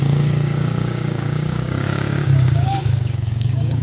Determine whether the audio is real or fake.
fake